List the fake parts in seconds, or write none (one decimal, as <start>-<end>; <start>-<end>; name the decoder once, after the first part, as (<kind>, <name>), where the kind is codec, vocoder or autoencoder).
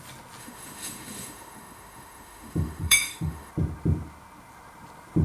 0.4-3.5 (autoencoder, DAC-VAE)